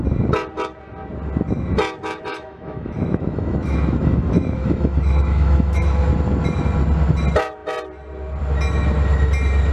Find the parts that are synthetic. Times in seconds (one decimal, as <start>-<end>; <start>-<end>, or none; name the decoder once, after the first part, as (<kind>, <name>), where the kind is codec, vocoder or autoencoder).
2.3-6.1 (autoencoder, DAC-VAE)